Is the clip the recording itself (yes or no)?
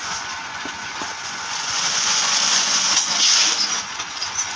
no